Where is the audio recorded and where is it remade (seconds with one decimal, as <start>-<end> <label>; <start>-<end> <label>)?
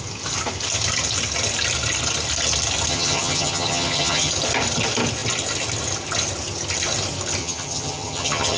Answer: 0.0-2.9 recorded; 2.9-4.3 remade; 4.3-7.4 recorded; 7.4-8.6 remade